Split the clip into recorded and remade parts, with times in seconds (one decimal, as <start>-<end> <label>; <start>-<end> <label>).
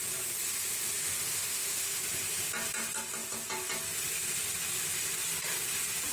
0.0-1.0 recorded; 1.0-2.0 remade; 2.0-6.1 recorded